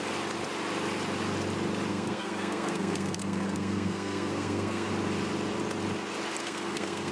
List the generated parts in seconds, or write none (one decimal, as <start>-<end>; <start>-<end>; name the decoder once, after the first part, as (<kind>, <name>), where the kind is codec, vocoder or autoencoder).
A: 1.9-4.9 (codec, SNAC); 6.4-7.1